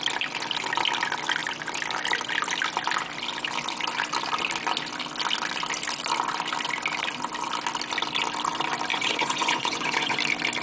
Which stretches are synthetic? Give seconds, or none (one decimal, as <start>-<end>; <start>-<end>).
8.9-10.2